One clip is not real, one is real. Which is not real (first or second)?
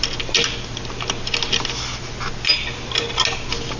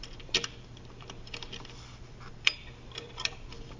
second